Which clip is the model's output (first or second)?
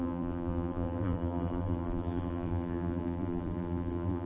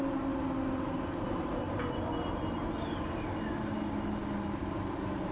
first